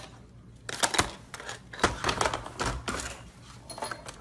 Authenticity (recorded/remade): recorded